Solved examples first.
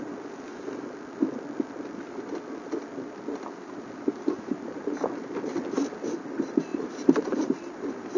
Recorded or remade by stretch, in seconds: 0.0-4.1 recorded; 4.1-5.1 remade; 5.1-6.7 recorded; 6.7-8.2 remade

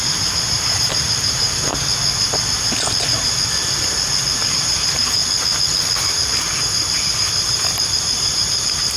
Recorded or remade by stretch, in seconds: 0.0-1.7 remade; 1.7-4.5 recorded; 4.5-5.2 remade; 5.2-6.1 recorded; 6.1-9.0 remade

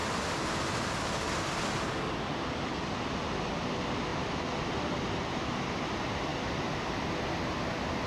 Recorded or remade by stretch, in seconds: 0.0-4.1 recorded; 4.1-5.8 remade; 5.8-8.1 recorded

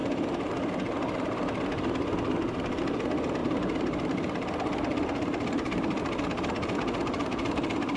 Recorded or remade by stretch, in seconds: 0.0-3.4 recorded; 3.4-6.0 remade; 6.0-7.0 recorded; 7.0-7.6 remade; 7.6-8.0 recorded